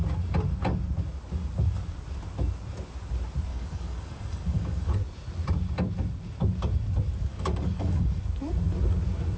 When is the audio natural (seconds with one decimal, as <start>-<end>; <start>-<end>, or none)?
0.0-3.5; 4.9-7.3; 8.2-9.4